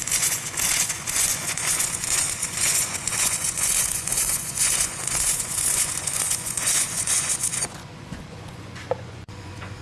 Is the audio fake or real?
fake